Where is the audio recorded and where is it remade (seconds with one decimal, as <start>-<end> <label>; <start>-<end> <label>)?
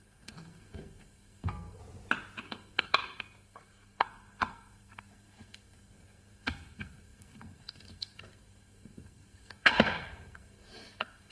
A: 0.0-1.8 remade; 1.8-2.4 recorded; 2.4-11.3 remade